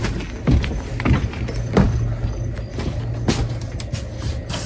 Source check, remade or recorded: recorded